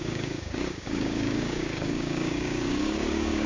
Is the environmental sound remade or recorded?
remade